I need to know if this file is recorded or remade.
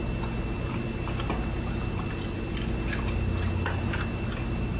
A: recorded